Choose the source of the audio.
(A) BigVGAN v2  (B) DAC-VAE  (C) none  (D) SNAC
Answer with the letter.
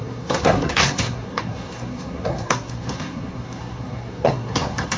D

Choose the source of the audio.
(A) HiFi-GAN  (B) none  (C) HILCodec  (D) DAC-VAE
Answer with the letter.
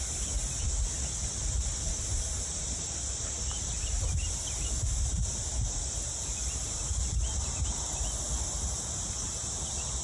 B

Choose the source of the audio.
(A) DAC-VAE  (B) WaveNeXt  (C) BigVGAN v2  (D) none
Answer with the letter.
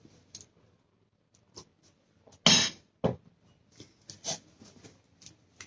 D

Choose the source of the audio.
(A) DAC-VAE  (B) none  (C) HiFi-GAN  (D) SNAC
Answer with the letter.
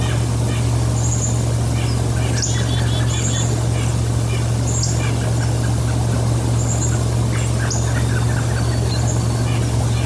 B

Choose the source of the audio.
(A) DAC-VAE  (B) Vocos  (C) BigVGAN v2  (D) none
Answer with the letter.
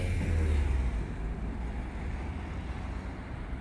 D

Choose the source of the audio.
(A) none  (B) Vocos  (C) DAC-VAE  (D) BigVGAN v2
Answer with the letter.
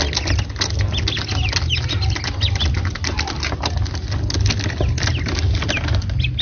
A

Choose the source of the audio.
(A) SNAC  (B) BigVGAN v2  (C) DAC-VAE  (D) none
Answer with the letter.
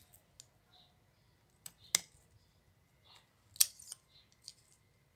D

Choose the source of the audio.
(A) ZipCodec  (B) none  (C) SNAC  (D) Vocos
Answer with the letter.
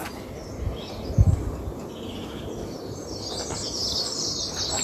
B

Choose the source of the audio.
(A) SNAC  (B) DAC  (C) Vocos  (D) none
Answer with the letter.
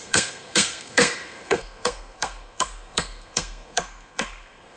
A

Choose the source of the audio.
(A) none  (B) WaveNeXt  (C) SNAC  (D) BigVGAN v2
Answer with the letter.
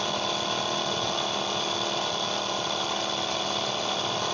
A